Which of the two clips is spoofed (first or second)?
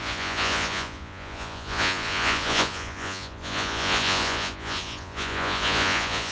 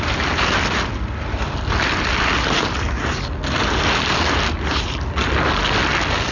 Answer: first